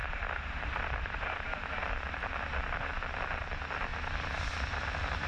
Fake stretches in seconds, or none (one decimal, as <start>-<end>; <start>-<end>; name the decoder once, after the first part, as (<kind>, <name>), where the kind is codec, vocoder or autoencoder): 0.0-3.2 (vocoder, BigVGAN v2); 3.9-5.3